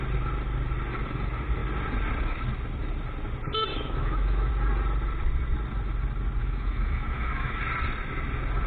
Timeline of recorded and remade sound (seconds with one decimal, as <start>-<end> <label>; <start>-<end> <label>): 0.0-3.7 recorded; 3.7-4.5 remade; 4.5-6.4 recorded; 6.4-7.6 remade; 7.6-8.7 recorded